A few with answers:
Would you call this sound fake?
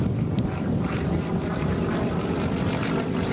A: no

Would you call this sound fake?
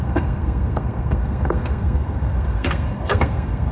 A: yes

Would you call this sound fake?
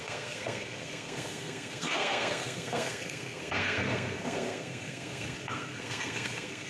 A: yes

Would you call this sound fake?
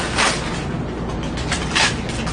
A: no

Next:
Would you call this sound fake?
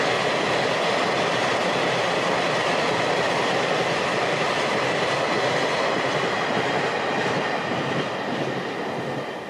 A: no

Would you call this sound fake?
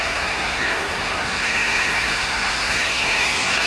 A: yes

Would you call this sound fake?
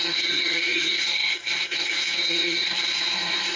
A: yes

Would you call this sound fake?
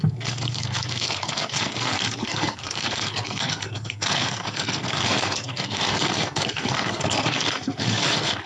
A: yes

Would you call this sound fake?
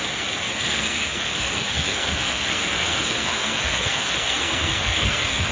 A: yes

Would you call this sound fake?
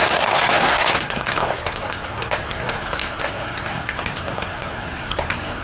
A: yes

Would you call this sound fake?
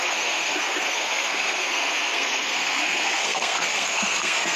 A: yes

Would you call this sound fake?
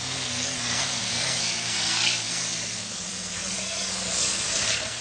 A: yes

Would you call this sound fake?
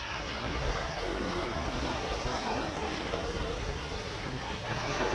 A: yes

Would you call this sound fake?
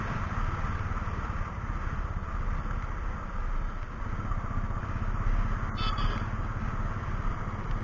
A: no